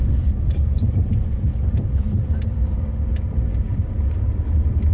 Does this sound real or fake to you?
real